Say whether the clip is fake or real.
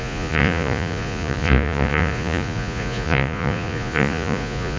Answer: fake